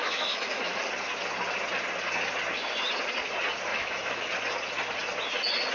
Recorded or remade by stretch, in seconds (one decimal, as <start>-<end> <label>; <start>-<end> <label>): 0.0-0.8 remade; 0.8-3.7 recorded; 3.7-4.3 remade; 4.3-5.7 recorded